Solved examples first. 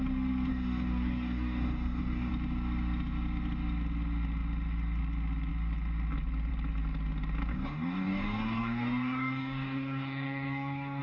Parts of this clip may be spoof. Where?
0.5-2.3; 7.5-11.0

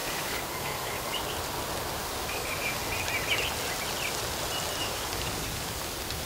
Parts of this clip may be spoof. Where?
0.0-1.2; 2.0-2.8; 4.8-5.8

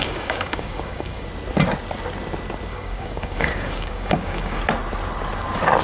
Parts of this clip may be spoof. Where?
0.0-1.3; 2.7-4.6